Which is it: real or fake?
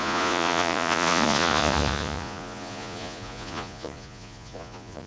fake